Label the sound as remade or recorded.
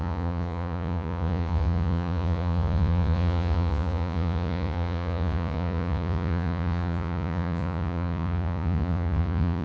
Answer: remade